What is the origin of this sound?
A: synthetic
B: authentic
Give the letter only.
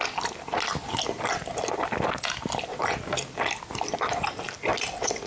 B